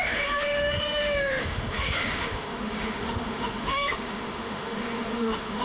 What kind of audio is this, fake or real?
fake